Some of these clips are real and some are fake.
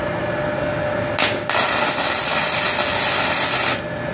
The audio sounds real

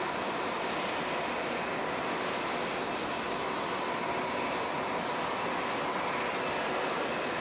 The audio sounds real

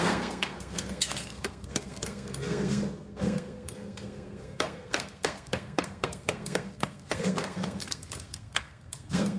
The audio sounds fake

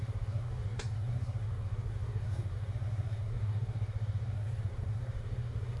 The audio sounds fake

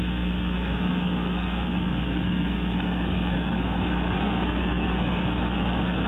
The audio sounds fake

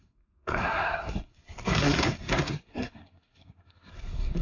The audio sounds fake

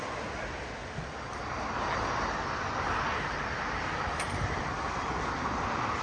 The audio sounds real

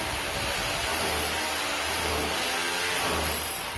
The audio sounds real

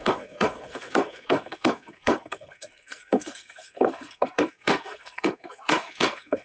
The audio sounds fake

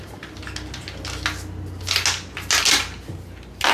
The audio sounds real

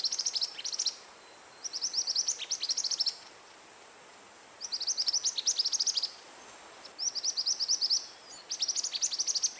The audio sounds real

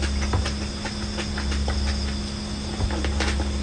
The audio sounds real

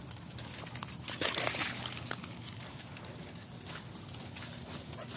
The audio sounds real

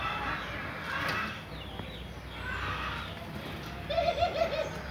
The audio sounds real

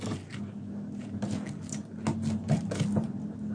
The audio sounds real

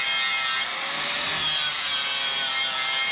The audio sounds real